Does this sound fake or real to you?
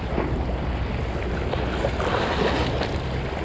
real